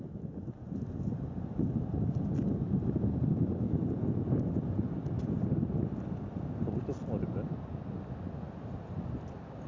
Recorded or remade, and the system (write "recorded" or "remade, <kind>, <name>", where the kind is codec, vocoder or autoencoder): recorded